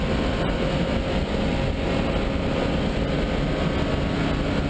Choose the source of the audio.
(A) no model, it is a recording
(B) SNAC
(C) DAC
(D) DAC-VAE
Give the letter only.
A